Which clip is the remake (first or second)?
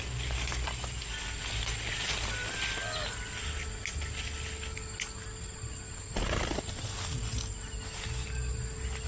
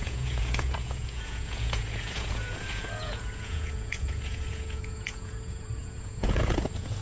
second